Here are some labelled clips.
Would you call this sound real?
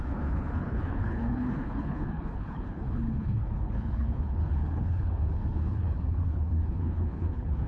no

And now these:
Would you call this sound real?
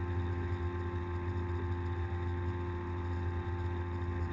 yes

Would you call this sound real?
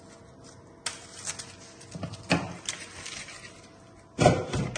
yes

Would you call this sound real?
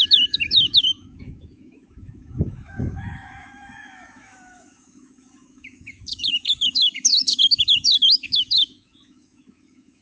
no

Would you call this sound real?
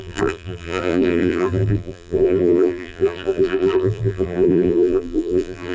no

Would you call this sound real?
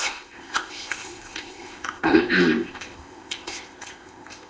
no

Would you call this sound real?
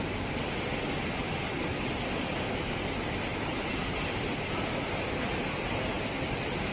yes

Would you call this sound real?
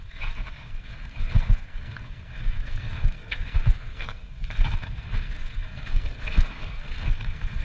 no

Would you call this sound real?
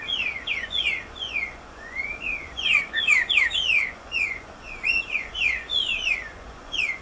no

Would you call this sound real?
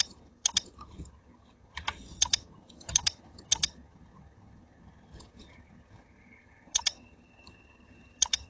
no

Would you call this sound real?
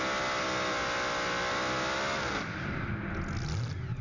yes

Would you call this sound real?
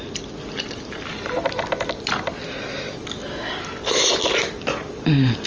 yes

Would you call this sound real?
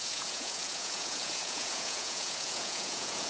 no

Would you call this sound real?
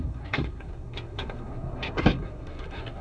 no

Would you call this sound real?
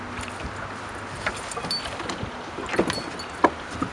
yes